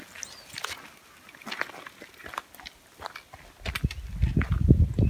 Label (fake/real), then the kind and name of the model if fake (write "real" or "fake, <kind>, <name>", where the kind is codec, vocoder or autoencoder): real